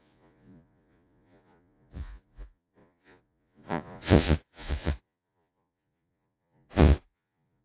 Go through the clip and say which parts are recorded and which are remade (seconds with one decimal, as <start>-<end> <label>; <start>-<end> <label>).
0.0-7.6 remade